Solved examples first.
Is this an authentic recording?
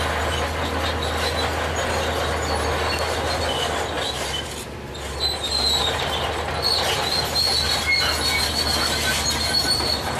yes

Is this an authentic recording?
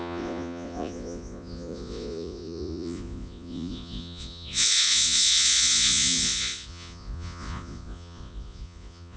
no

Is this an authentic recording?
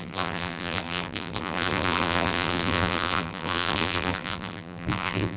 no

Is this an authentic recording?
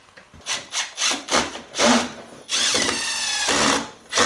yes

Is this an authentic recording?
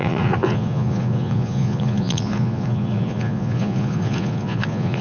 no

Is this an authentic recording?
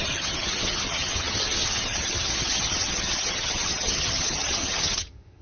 no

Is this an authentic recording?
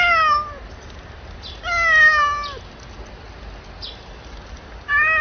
yes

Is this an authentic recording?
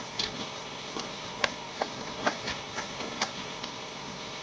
no